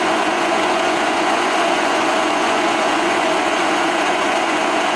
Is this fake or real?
fake